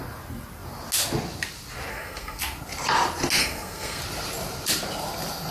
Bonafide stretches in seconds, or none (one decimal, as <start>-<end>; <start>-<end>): 0.0-1.9; 2.4-3.4; 4.0-5.5

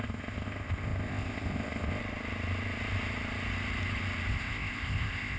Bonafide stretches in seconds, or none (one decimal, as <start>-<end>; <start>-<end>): 2.0-4.3

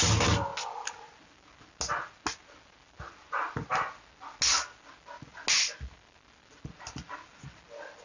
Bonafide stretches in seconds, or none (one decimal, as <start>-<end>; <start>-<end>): 0.0-8.0

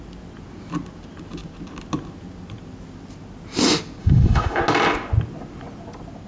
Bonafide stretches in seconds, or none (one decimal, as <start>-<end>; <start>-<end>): 0.0-4.0; 4.6-6.3